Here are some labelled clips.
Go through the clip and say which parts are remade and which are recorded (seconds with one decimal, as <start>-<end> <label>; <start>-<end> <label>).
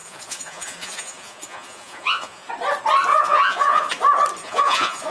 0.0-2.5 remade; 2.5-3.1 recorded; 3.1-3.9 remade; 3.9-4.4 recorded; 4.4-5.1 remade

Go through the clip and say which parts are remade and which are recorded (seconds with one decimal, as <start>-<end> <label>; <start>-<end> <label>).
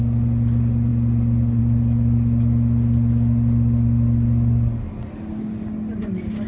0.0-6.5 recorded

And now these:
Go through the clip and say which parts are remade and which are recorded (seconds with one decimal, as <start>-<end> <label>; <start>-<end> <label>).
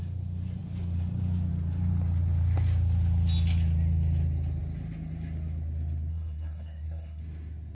0.0-6.1 recorded; 6.1-7.2 remade; 7.2-7.7 recorded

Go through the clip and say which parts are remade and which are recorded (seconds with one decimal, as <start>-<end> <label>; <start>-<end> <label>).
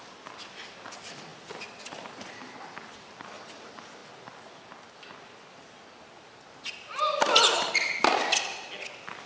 0.0-9.3 recorded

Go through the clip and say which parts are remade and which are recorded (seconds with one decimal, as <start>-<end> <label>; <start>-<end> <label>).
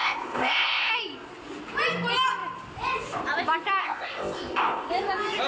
0.0-0.9 remade; 0.9-3.8 recorded; 3.8-4.9 remade; 4.9-5.5 recorded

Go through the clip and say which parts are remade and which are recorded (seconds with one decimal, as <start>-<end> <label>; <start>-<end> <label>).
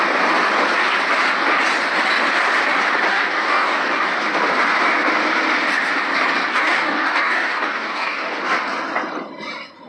0.0-3.1 recorded; 3.1-4.1 remade; 4.1-6.5 recorded; 6.5-8.4 remade; 8.4-9.9 recorded